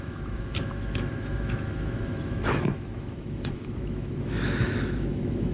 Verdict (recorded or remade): remade